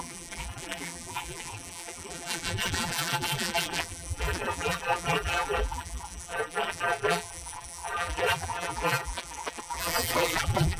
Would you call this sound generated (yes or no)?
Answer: yes